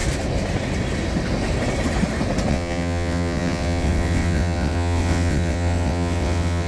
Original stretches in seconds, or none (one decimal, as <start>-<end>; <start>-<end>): 0.0-2.5